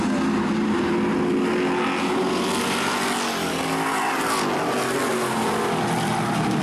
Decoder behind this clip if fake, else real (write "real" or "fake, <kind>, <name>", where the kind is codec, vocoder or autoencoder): real